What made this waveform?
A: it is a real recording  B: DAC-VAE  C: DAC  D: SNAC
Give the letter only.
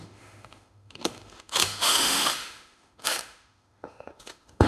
B